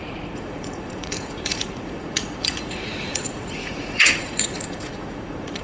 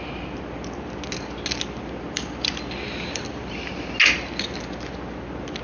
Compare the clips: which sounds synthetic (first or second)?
first